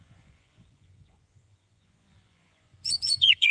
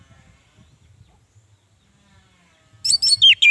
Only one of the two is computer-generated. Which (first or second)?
first